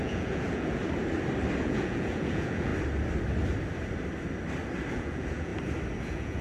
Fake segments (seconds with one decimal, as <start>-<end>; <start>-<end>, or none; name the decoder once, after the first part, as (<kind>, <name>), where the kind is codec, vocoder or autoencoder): 0.0-0.8 (vocoder, Vocos); 1.6-2.7; 4.9-5.5; 6.0-6.4